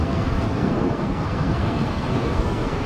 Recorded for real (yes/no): no